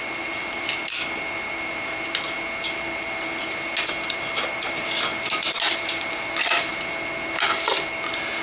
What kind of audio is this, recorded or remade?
recorded